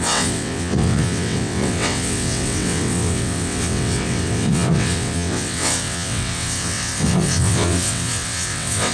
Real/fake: fake